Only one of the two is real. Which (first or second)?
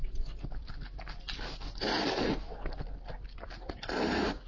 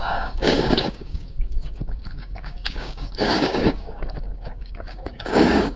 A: first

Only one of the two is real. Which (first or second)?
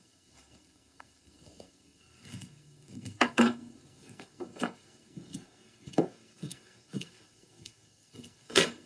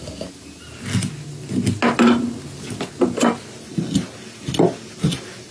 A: second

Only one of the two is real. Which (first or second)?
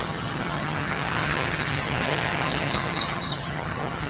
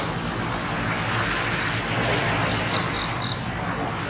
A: second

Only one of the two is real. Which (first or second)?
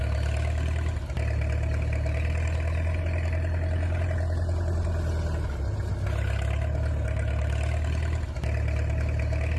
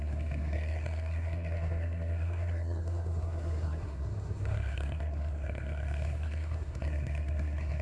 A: first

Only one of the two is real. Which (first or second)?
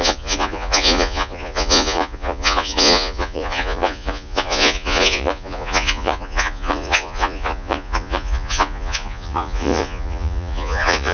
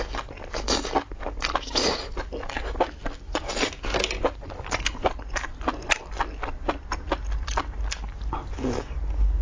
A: second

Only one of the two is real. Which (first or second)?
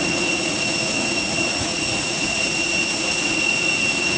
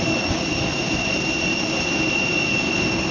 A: second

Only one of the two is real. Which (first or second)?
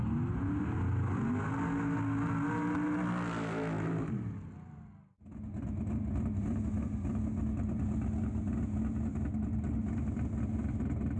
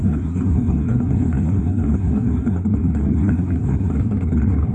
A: first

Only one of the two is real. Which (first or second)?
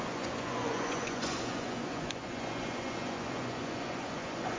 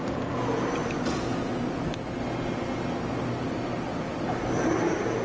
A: second